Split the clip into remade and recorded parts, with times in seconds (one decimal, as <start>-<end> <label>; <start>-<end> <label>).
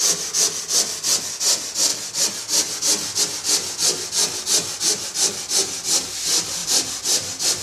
0.0-6.6 recorded; 6.6-7.6 remade